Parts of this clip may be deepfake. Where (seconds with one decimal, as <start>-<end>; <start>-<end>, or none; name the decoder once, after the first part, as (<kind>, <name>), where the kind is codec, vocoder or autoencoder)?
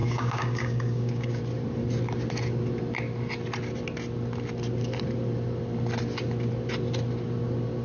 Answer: 0.0-1.4 (codec, DAC)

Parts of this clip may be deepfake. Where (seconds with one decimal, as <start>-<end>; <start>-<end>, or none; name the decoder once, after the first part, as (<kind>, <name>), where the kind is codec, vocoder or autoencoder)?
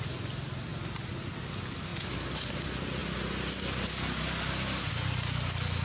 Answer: none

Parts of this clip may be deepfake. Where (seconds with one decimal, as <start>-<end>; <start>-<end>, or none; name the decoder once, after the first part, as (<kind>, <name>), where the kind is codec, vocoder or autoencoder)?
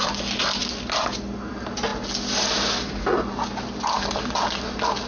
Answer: none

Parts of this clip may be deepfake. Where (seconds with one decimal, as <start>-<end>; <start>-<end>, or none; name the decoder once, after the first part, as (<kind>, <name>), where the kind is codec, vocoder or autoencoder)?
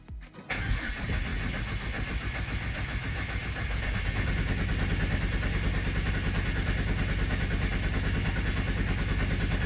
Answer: none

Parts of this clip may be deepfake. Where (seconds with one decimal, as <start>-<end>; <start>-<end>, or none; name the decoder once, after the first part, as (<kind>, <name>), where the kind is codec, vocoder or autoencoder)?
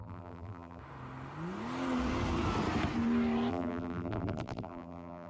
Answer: 0.0-0.8 (vocoder, BigVGAN v2); 3.5-5.3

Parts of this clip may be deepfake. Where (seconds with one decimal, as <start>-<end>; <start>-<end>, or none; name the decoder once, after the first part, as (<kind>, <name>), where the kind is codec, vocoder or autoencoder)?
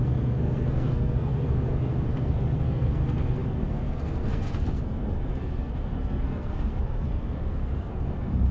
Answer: 0.0-8.5 (codec, SNAC)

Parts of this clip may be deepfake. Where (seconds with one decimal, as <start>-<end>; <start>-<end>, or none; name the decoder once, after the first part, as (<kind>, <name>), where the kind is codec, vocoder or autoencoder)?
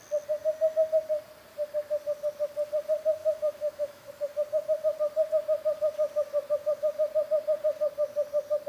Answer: 3.2-4.1 (autoencoder, DAC-VAE)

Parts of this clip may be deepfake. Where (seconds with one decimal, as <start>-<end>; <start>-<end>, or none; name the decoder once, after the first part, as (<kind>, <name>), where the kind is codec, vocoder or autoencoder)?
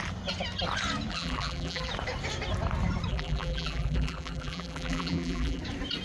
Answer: 1.1-1.9 (vocoder, BigVGAN v2); 3.1-5.6